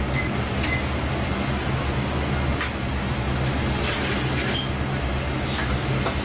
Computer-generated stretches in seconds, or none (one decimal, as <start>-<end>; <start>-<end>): none